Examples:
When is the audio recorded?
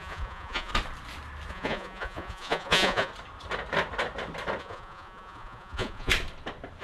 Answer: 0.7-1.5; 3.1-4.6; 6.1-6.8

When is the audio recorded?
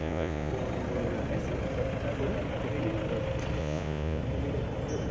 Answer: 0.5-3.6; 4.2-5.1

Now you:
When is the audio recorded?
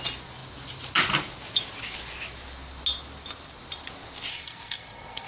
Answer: 0.0-4.3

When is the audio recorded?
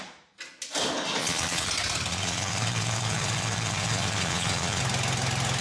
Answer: 0.0-1.2; 1.7-2.1; 4.8-5.6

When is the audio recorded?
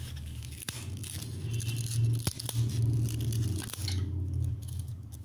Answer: 1.0-3.7